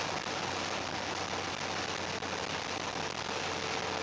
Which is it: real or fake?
real